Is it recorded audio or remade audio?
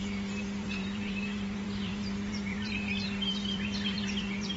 remade